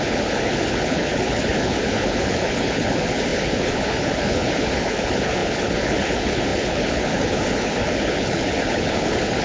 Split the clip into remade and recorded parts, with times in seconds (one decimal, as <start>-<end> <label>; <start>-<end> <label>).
0.0-9.4 remade